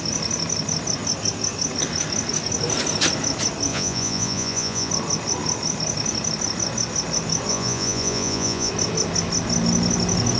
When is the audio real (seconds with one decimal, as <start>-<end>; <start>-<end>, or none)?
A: 0.0-3.7; 4.9-7.5; 8.7-10.4